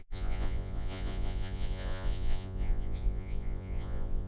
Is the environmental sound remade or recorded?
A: remade